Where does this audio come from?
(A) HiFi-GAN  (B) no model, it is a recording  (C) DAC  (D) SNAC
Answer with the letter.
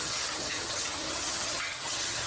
A